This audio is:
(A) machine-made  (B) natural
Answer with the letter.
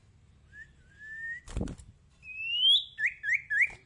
B